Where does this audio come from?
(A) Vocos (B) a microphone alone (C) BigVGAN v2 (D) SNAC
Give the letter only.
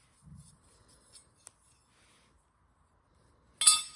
B